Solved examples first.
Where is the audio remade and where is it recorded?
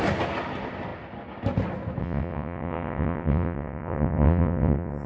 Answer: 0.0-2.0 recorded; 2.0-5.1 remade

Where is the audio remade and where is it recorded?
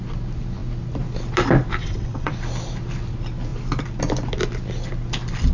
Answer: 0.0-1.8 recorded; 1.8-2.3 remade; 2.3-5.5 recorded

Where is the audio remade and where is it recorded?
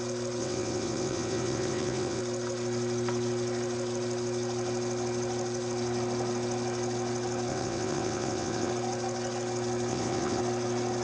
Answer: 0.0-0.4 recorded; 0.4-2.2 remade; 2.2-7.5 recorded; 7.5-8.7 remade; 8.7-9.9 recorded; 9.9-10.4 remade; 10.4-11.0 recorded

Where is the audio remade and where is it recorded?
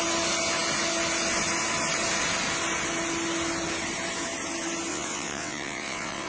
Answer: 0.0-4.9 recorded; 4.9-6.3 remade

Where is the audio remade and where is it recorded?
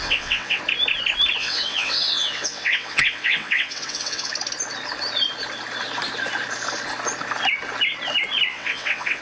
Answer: 0.0-0.6 remade; 0.6-1.4 recorded; 1.4-4.3 remade; 4.3-8.5 recorded; 8.5-9.2 remade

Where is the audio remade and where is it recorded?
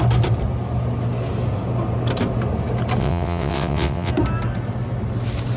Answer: 0.0-3.0 recorded; 3.0-4.1 remade; 4.1-5.6 recorded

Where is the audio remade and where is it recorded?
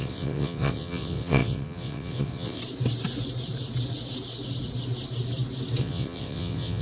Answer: 0.0-2.6 remade; 2.6-5.8 recorded; 5.8-6.8 remade